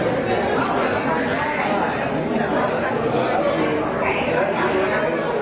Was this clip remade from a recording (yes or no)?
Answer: no